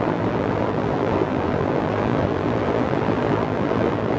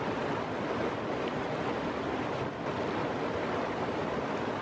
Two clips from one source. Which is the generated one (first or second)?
first